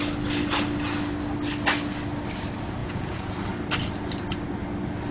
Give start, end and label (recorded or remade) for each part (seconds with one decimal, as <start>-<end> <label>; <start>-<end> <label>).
0.0-2.8 recorded; 2.8-3.3 remade; 3.3-5.1 recorded